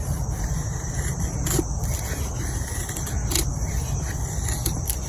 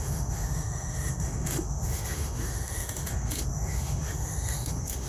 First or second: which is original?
first